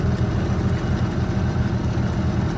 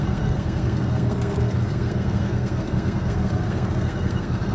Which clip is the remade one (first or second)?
second